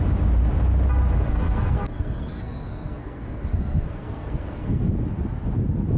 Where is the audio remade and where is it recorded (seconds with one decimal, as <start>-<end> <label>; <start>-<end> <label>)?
0.0-1.3 recorded; 1.3-4.9 remade; 4.9-6.0 recorded